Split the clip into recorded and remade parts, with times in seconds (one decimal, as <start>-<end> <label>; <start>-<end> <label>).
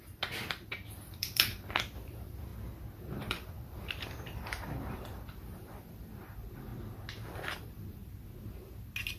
0.0-2.5 remade; 2.5-3.0 recorded; 3.0-6.7 remade; 6.7-7.5 recorded; 7.5-8.0 remade; 8.0-9.2 recorded